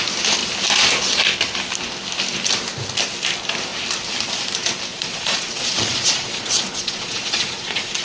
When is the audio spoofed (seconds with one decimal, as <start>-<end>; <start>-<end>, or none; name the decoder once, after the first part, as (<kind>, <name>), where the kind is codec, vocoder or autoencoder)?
4.9-8.0 (vocoder, Vocos)